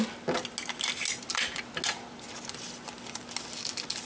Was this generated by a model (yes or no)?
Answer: no